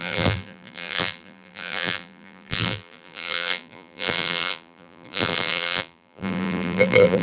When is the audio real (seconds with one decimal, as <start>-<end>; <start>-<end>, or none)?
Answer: none